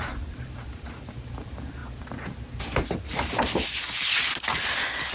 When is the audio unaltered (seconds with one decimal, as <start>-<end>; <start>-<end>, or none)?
1.8-5.1